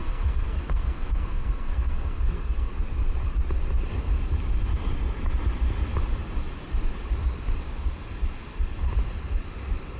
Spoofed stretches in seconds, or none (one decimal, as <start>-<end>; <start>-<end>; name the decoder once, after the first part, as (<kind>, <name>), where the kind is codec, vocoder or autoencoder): 0.0-2.7 (codec, SNAC)